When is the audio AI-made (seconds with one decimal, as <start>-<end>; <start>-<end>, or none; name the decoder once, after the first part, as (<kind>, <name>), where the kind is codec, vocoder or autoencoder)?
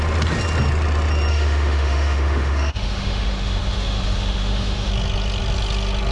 1.3-4.9 (autoencoder, DAC-VAE)